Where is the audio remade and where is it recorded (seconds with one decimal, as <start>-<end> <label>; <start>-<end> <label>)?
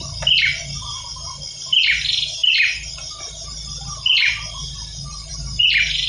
0.0-6.1 recorded